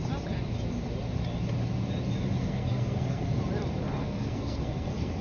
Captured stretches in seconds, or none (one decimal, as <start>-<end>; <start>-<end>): 0.0-2.4; 3.4-4.0